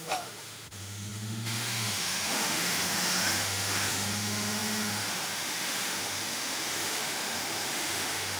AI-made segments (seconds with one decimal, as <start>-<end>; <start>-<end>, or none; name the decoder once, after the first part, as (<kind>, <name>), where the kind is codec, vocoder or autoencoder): 0.0-8.4 (autoencoder, DAC-VAE)